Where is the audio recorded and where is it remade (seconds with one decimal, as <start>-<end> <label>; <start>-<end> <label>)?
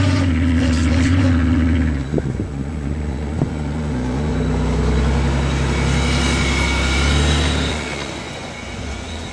0.0-4.3 remade; 4.3-7.7 recorded; 7.7-9.3 remade